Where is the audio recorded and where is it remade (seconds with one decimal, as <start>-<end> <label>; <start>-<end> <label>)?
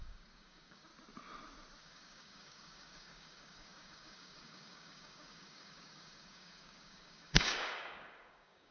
0.0-0.9 remade; 0.9-1.8 recorded; 1.8-8.7 remade